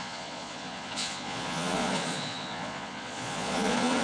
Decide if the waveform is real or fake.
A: fake